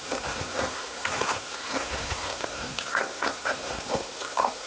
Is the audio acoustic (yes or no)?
no